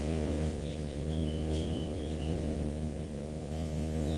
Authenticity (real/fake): fake